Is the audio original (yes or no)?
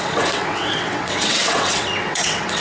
no